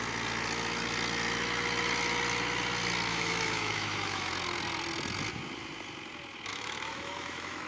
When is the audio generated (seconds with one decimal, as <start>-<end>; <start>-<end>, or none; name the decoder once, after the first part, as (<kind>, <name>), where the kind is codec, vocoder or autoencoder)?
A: 3.1-4.3 (autoencoder, DAC-VAE); 6.5-7.7